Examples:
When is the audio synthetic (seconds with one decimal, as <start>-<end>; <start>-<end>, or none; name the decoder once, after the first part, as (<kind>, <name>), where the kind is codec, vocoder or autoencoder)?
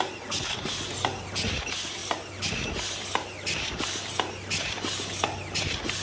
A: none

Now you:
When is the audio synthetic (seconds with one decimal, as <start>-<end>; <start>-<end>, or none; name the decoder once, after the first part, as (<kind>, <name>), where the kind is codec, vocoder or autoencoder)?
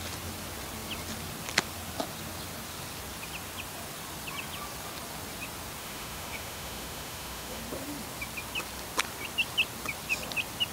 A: 5.8-7.6 (autoencoder, DAC-VAE)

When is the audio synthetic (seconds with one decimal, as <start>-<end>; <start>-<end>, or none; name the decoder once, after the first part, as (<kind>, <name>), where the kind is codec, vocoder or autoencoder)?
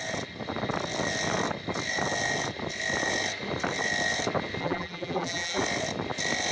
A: 4.6-5.6 (vocoder, BigVGAN v2)